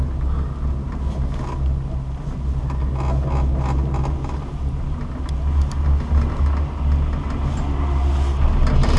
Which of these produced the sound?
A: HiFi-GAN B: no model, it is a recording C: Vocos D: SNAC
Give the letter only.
B